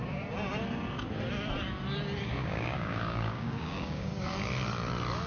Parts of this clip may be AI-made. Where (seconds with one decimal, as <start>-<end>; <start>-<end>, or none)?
2.3-4.1